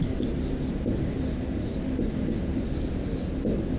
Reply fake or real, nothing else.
real